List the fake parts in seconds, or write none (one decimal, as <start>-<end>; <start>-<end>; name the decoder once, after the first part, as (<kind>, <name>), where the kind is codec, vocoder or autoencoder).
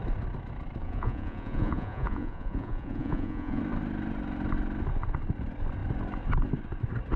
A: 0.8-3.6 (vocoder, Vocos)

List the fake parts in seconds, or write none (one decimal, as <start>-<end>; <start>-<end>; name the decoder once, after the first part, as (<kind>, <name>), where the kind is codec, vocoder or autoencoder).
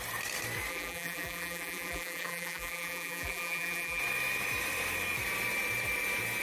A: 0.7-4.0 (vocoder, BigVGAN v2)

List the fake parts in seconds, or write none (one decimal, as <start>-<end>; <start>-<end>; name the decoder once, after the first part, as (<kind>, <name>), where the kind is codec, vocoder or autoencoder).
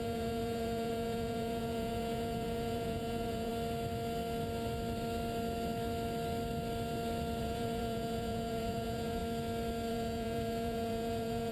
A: 0.0-3.5 (vocoder, Vocos); 7.4-9.2; 9.9-11.5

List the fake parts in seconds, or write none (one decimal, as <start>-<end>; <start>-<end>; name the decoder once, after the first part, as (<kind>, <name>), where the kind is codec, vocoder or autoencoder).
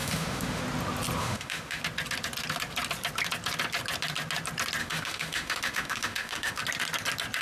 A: 0.0-0.6 (autoencoder, DAC-VAE); 1.2-1.8; 4.8-6.6